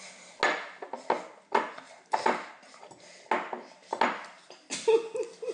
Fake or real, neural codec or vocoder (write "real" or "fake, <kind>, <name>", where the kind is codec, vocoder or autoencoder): real